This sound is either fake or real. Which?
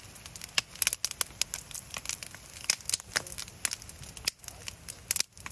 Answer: real